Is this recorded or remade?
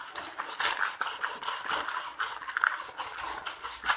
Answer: recorded